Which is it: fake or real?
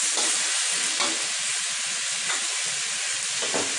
real